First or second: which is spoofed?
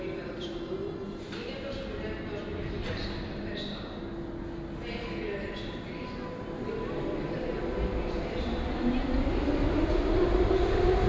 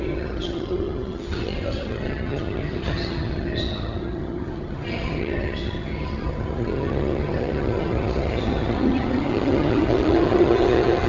second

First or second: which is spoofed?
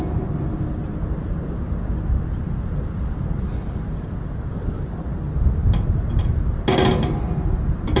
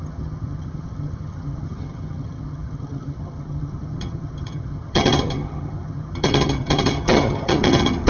second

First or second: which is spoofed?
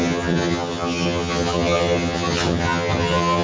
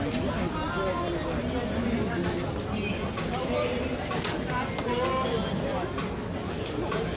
first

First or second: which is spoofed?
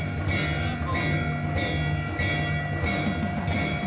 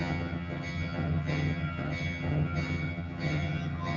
second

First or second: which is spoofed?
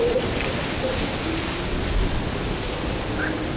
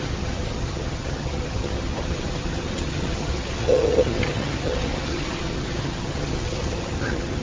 second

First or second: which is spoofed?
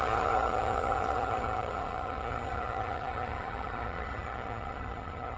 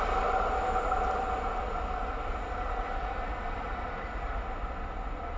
first